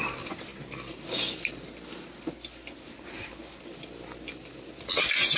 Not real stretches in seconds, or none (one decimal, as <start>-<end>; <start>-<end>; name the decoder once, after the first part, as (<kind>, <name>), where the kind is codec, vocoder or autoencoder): none